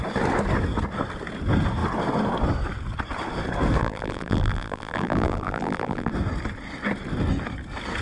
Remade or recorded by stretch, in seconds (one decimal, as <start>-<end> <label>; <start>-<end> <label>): 0.0-3.8 recorded; 3.8-6.1 remade; 6.1-8.0 recorded